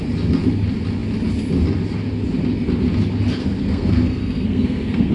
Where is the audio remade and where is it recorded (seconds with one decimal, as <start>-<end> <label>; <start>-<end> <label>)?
0.0-3.4 recorded; 3.4-5.1 remade